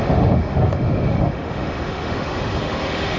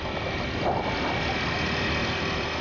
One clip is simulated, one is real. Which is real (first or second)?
second